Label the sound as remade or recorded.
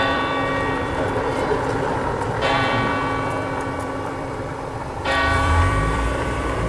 remade